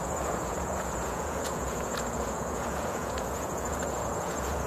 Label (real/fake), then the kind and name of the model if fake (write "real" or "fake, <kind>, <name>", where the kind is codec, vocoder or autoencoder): fake, vocoder, Vocos